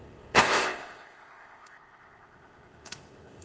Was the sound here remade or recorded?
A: remade